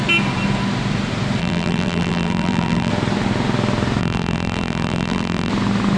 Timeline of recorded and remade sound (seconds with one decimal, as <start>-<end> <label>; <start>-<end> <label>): 0.0-1.4 recorded; 1.4-2.9 remade; 2.9-4.0 recorded; 4.0-5.5 remade; 5.5-6.0 recorded

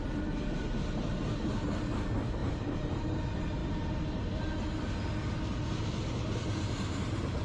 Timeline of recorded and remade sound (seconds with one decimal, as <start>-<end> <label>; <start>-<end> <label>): 0.0-2.4 recorded; 2.4-3.0 remade; 3.0-7.4 recorded